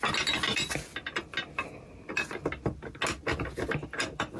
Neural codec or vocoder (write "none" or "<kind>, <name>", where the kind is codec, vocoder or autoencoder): none